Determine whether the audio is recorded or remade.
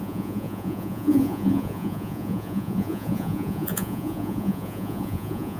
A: remade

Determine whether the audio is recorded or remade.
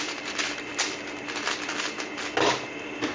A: recorded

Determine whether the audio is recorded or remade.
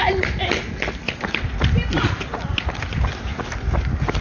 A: recorded